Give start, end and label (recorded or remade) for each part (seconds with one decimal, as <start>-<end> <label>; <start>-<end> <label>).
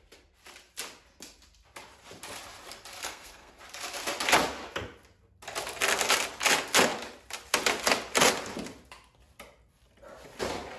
0.0-3.0 recorded; 3.0-3.5 remade; 3.5-10.8 recorded